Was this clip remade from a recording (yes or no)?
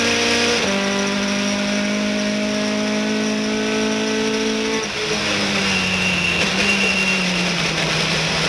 no